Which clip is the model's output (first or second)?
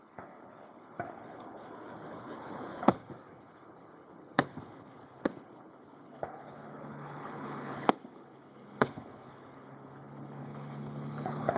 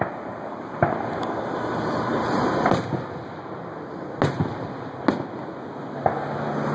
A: first